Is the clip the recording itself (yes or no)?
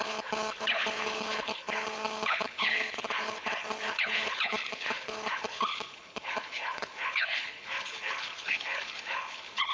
no